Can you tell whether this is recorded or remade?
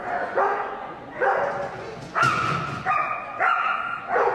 remade